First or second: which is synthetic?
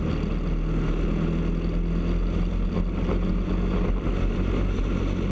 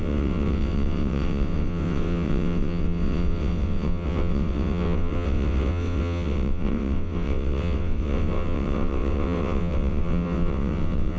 second